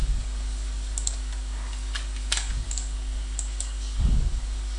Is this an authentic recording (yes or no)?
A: no